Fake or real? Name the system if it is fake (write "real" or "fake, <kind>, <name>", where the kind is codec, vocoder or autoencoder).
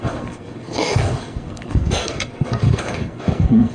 fake, codec, SNAC